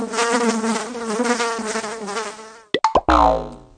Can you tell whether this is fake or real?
real